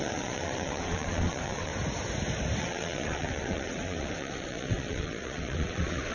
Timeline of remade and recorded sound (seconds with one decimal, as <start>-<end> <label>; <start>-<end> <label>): 0.0-1.7 remade; 1.7-2.6 recorded; 2.6-6.1 remade